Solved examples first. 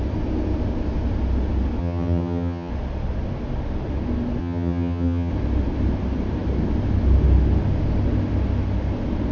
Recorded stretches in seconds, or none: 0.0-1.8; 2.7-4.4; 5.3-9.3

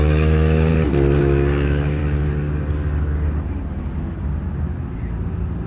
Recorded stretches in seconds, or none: 0.7-1.2; 2.0-5.7

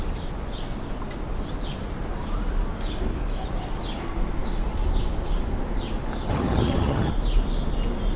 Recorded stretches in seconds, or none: 0.0-6.3; 7.1-8.2

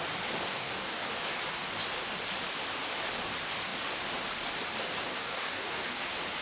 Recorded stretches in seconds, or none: 0.0-0.5; 1.1-5.2; 5.9-6.4

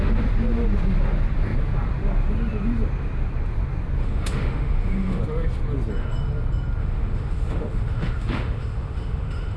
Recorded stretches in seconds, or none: 0.0-4.0; 5.2-6.8

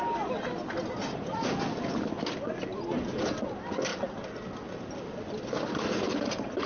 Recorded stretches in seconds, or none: 0.0-6.7

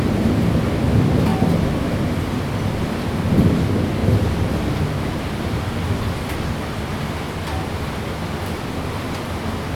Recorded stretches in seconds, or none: 0.0-4.0; 6.3-9.7